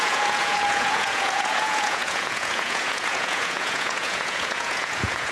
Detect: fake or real fake